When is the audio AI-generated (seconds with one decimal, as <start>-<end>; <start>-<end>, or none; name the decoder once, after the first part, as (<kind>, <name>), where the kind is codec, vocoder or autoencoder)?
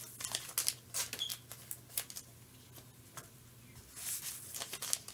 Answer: none